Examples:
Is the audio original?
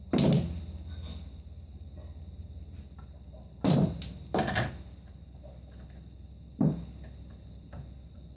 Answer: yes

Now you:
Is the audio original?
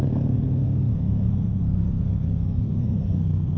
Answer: no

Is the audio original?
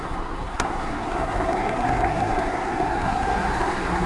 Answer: no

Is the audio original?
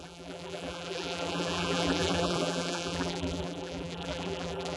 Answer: no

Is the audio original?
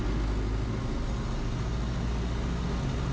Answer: yes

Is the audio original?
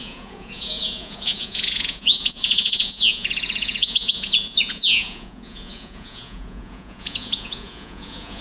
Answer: no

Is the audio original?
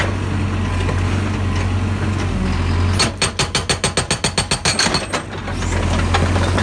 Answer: yes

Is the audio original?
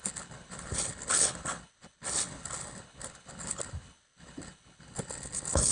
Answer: no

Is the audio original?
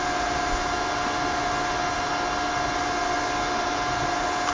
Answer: yes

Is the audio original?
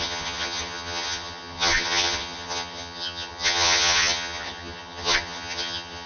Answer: no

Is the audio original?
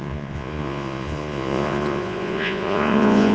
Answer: no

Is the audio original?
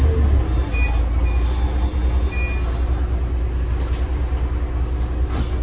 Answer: yes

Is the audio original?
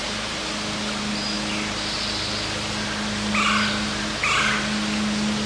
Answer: yes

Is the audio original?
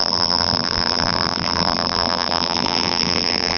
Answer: no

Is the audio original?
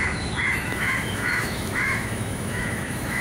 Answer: no